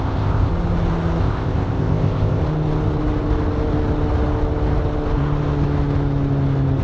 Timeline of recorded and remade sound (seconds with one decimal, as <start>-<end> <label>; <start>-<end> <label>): 0.0-0.5 remade; 0.5-1.2 recorded; 1.2-2.4 remade; 2.4-6.8 recorded